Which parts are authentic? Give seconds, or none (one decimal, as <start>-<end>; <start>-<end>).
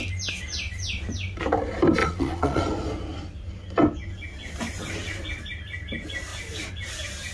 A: 0.0-2.0; 2.6-7.3